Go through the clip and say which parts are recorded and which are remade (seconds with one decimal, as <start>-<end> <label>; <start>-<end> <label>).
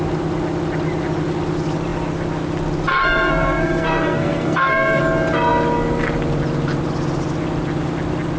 0.0-2.9 recorded; 2.9-5.0 remade; 5.0-8.4 recorded